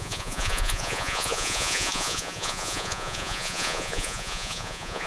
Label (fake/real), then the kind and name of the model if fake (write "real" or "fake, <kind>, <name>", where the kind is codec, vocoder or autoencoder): fake, vocoder, Vocos